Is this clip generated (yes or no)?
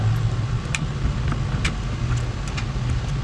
no